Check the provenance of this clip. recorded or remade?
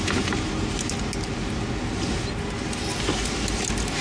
recorded